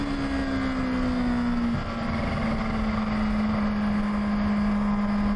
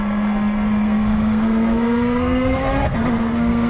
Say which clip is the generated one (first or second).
second